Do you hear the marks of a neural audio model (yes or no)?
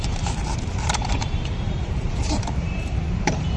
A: yes